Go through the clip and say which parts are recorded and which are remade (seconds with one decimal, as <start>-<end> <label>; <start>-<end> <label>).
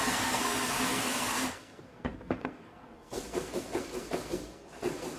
0.0-5.2 remade